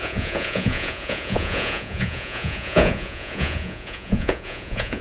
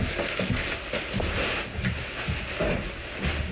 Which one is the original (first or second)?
second